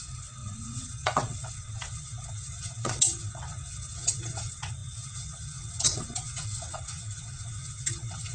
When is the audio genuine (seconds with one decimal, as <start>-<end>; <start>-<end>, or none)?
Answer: none